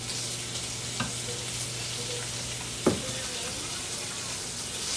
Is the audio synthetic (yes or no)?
no